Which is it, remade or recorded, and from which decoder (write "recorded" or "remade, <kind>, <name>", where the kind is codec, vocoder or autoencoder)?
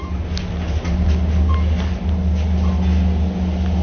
recorded